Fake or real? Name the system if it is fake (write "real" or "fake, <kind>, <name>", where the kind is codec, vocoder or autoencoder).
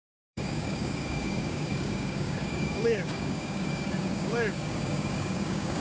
fake, codec, DAC